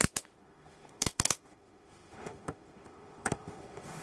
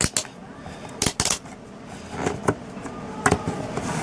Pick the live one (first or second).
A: second